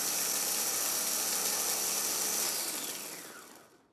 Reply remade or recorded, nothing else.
recorded